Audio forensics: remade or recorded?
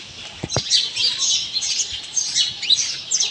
recorded